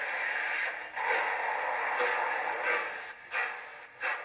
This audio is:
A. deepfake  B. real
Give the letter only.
B